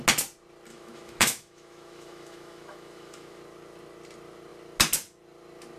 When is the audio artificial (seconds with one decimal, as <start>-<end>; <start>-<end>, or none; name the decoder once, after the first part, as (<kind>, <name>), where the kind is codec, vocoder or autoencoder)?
0.7-3.4 (autoencoder, DAC-VAE)